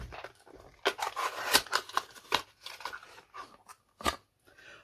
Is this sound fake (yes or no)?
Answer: no